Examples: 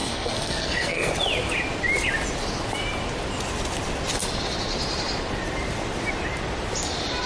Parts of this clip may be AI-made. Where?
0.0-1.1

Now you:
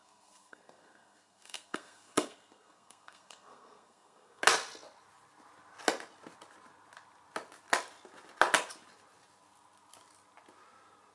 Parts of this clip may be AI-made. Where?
0.0-4.4

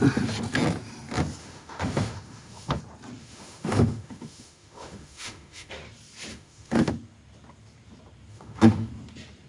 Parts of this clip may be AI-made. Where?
1.4-2.8; 3.2-5.7; 6.3-6.9; 8.3-8.9

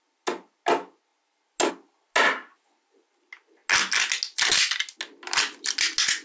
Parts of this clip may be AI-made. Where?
none